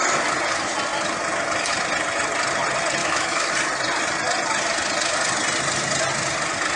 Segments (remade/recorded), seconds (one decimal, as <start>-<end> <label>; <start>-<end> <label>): 0.0-3.0 recorded; 3.0-3.5 remade; 3.5-6.8 recorded